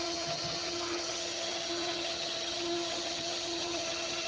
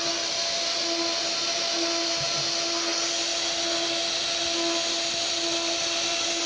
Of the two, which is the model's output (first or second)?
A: first